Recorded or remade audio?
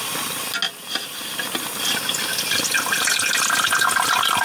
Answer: recorded